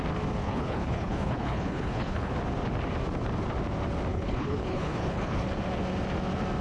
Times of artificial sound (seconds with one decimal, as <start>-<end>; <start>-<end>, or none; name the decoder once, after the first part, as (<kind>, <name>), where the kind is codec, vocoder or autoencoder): 0.4-2.3 (codec, HILCodec); 4.1-5.5